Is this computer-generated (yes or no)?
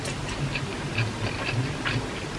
no